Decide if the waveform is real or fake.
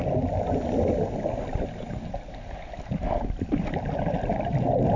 real